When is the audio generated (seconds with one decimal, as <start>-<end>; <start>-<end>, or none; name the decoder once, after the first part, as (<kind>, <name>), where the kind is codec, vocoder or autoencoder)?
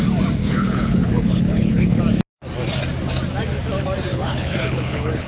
0.4-2.0 (codec, HILCodec); 4.1-5.3